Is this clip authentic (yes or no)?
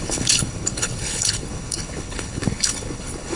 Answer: no